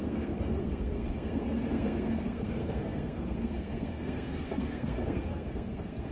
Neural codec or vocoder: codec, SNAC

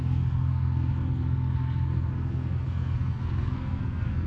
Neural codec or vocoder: codec, SNAC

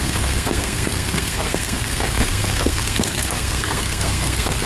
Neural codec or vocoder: codec, SNAC